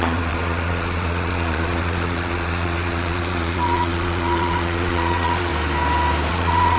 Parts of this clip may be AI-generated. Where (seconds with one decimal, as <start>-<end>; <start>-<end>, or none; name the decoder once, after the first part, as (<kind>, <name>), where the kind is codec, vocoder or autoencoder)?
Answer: 0.0-5.5 (vocoder, Vocos); 6.3-6.8